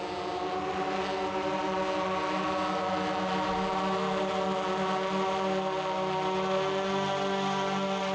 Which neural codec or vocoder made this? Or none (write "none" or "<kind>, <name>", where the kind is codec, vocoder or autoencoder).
none